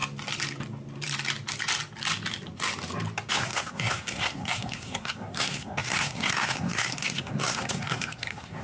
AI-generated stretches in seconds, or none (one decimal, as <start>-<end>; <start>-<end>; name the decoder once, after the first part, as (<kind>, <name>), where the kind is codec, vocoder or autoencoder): 3.3-8.6 (codec, SNAC)